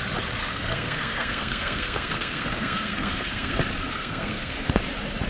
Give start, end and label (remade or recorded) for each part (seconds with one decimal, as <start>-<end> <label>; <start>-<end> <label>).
0.0-0.4 recorded; 0.4-3.6 remade; 3.6-4.0 recorded; 4.0-4.8 remade; 4.8-5.3 recorded